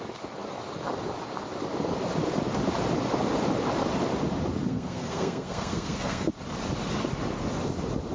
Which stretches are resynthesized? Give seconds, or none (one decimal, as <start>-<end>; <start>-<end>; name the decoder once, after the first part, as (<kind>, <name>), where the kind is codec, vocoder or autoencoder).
4.7-6.3 (codec, SNAC)